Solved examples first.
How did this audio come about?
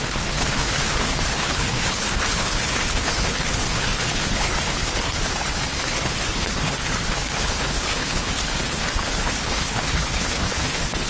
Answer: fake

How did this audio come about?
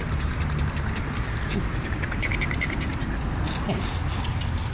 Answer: real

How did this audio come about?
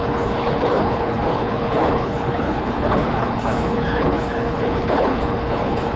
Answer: fake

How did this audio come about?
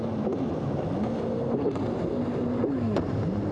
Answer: real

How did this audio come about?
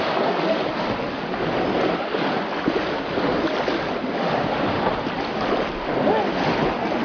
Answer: real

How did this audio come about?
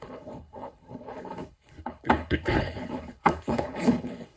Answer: fake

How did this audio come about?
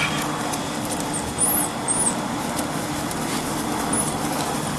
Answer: real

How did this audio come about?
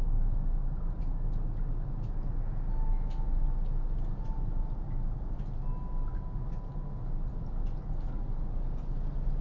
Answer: real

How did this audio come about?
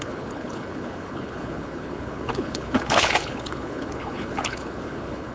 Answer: fake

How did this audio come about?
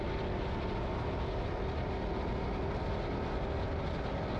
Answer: real